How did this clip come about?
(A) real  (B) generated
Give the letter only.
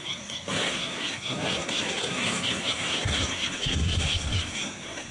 B